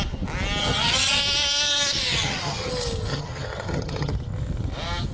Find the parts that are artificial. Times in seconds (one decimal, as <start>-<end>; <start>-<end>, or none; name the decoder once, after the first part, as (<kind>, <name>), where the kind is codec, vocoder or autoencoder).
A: 0.6-1.2 (vocoder, HiFi-GAN); 2.1-2.7; 3.1-4.1